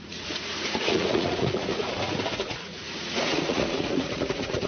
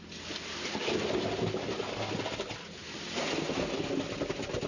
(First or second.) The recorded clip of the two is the second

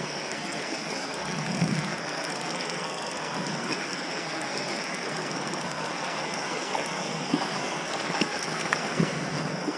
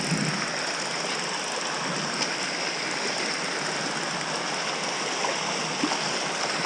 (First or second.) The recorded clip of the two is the second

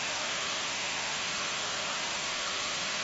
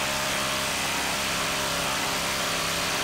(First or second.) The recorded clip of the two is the second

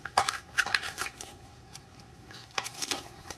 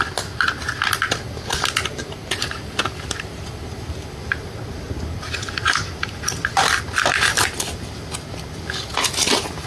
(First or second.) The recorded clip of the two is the second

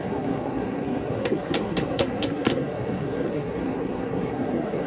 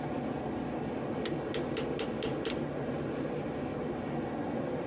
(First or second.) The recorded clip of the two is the second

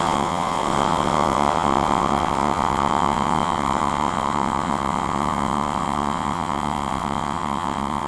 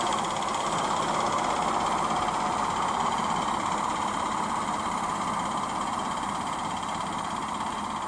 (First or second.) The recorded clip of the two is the second